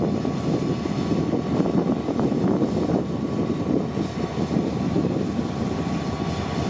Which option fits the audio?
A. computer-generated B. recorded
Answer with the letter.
B